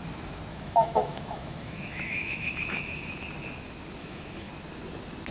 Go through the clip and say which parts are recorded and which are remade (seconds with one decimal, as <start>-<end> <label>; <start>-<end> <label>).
0.0-0.5 recorded; 0.5-3.1 remade; 3.1-4.0 recorded; 4.0-4.5 remade; 4.5-5.3 recorded